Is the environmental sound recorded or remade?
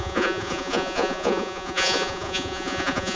remade